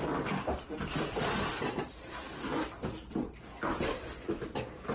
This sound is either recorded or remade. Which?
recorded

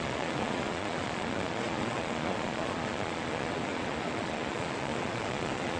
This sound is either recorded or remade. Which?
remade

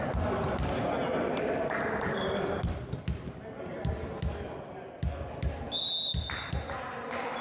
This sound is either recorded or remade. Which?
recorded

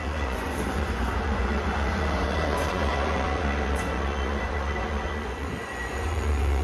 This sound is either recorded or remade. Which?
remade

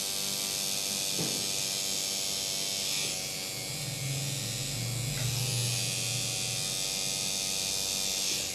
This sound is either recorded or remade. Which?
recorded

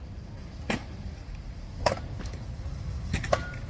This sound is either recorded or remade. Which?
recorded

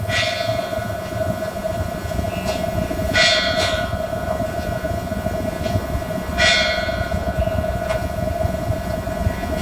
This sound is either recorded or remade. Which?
remade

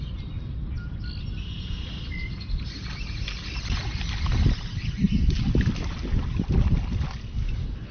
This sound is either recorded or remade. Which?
recorded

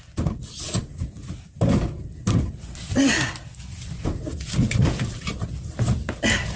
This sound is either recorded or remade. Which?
recorded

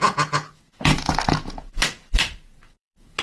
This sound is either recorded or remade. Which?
remade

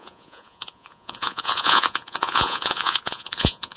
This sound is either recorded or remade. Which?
remade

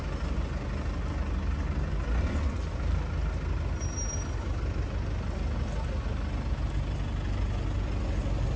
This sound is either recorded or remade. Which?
recorded